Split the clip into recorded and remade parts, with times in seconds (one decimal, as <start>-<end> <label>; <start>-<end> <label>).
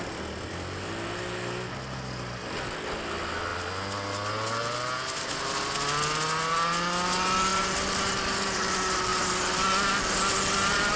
0.0-7.5 recorded; 7.5-8.7 remade; 8.7-11.0 recorded